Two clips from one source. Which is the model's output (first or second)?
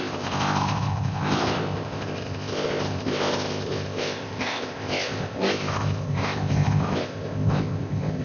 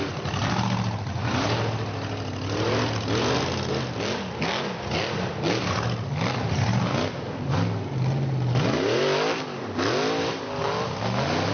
first